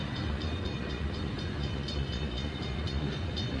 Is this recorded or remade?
remade